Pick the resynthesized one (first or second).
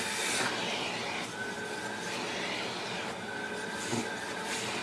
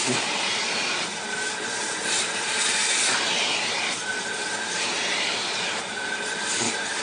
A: second